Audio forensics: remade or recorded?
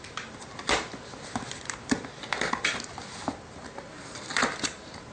recorded